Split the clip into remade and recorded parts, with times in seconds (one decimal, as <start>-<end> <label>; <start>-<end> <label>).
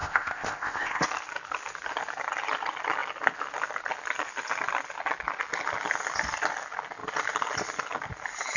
0.0-1.0 remade; 1.0-8.6 recorded